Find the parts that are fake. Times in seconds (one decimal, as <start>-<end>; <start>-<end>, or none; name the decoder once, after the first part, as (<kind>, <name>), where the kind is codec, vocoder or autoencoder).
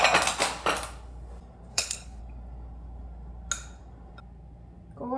1.7-2.2 (codec, HILCodec)